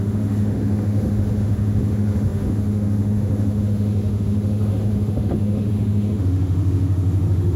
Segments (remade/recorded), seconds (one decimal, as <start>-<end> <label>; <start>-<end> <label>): 0.0-7.6 remade